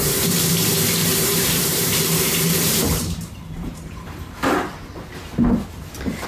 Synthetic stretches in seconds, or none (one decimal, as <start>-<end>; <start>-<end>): 1.0-4.8